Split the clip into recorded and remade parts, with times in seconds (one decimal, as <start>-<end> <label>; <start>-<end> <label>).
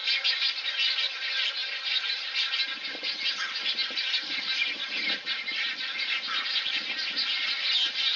0.0-1.6 recorded; 1.6-2.6 remade; 2.6-4.6 recorded; 4.6-5.7 remade; 5.7-8.2 recorded